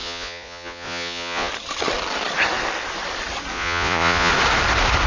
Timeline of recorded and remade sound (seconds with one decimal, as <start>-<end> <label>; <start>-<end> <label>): 0.0-1.5 remade; 1.5-3.5 recorded; 3.5-4.3 remade; 4.3-5.1 recorded

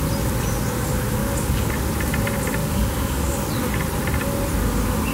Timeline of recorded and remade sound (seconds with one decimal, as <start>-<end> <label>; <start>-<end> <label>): 0.0-1.2 recorded; 1.2-1.7 remade; 1.7-2.6 recorded; 2.6-3.5 remade; 3.5-5.1 recorded

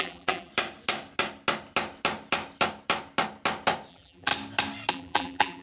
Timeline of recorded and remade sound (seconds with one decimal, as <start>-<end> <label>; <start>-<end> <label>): 0.0-0.5 remade; 0.5-3.9 recorded; 3.9-4.3 remade; 4.3-4.9 recorded; 4.9-5.6 remade

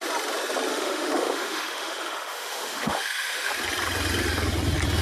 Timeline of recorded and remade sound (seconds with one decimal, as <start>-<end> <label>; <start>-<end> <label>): 0.0-0.7 recorded; 0.7-3.5 remade; 3.5-5.0 recorded

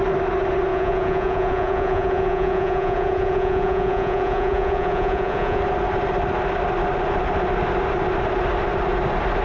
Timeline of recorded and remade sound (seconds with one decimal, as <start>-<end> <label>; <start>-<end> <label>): 0.0-0.7 recorded; 0.7-5.6 remade; 5.6-9.4 recorded

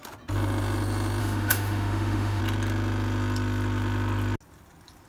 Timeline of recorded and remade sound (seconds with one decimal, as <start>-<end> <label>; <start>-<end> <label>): 0.0-1.2 recorded; 1.2-2.4 remade; 2.4-5.1 recorded